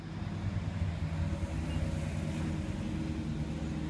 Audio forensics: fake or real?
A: real